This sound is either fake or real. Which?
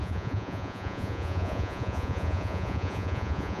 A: fake